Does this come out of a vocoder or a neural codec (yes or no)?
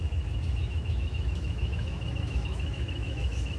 yes